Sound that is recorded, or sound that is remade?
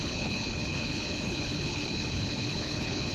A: remade